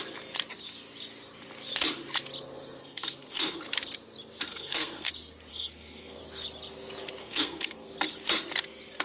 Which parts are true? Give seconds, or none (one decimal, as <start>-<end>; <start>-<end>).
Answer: 0.0-2.8; 3.6-4.5; 5.1-5.5; 6.2-7.2; 7.9-9.0